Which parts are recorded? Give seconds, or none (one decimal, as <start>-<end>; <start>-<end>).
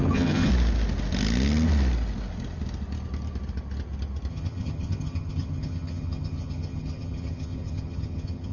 0.5-4.3